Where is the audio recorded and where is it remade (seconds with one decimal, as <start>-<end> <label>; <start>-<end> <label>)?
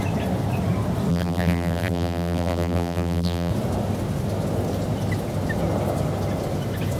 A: 0.0-1.1 recorded; 1.1-3.5 remade; 3.5-7.0 recorded